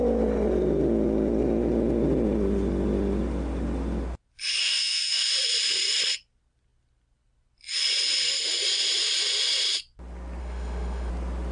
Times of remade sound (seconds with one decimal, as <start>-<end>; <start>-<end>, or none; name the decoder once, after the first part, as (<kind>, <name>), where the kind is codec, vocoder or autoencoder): 4.6-5.3 (autoencoder, DAC-VAE); 10.4-11.1